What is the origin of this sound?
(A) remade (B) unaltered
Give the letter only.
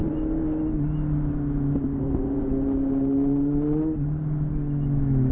B